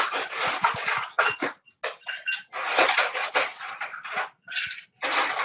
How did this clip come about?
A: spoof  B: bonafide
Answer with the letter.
B